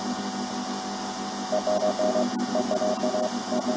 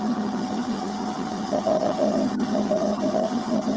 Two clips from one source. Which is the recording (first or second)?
first